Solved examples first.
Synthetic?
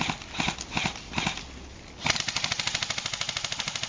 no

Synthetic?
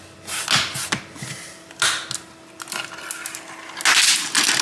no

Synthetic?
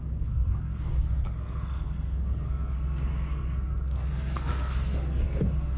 yes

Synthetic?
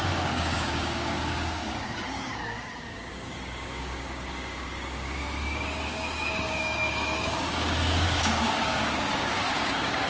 yes